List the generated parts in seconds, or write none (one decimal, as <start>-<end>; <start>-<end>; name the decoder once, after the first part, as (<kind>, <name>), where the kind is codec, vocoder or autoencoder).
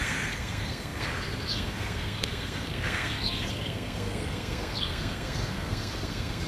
0.0-6.5 (codec, SNAC)